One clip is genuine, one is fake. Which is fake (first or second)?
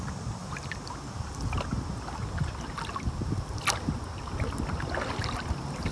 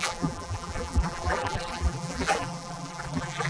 second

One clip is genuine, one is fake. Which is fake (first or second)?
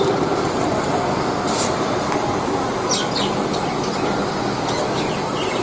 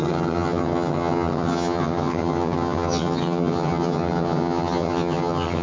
second